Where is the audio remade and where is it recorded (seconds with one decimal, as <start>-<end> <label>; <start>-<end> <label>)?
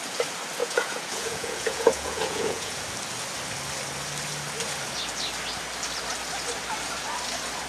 0.0-0.6 recorded; 0.6-2.8 remade; 2.8-7.7 recorded